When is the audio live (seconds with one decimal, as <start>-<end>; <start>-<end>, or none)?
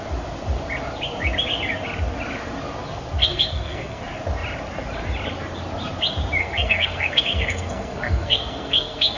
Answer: 0.0-3.2; 4.0-6.4